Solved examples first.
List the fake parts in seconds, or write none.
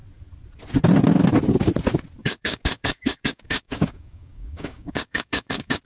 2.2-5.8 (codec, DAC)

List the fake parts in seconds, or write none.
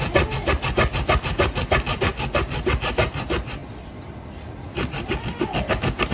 3.6-6.1 (vocoder, BigVGAN v2)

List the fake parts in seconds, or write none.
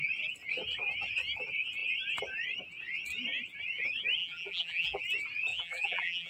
4.2-5.0 (vocoder, BigVGAN v2); 5.5-6.3